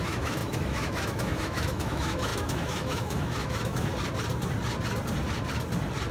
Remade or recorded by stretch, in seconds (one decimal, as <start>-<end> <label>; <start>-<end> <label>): 0.0-3.9 remade; 3.9-6.1 recorded